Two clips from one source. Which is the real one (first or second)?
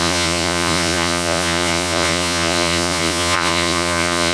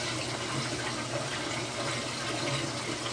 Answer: second